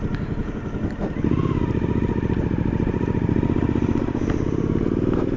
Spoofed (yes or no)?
no